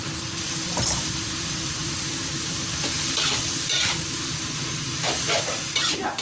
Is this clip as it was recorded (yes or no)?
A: no